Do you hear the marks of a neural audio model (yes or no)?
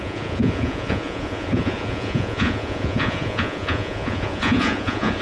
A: yes